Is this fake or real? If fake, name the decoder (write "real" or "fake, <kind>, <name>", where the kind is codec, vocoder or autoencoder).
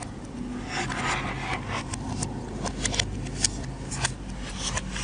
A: real